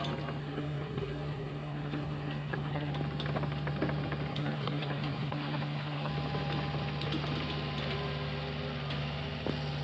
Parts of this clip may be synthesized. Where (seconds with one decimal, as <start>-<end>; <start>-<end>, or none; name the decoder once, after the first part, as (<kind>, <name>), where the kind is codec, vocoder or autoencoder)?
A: 0.4-2.9 (codec, SNAC); 4.3-6.1